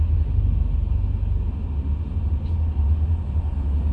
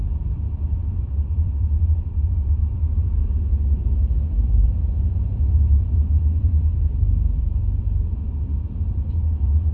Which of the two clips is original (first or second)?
first